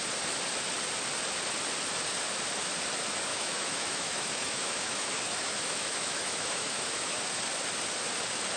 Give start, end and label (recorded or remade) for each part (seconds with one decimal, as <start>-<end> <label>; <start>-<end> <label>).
0.0-3.3 recorded; 3.3-7.2 remade; 7.2-8.6 recorded